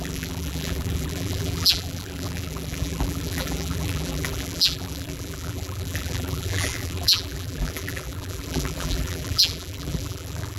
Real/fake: fake